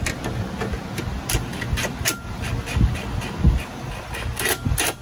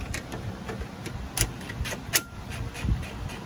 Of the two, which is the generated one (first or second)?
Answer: second